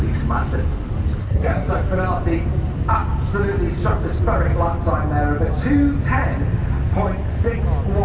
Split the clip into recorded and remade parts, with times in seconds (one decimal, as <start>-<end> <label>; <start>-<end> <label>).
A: 0.0-1.2 recorded; 1.2-1.7 remade; 1.7-8.0 recorded